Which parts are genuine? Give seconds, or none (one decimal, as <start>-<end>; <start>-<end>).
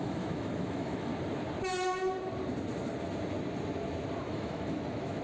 1.1-4.2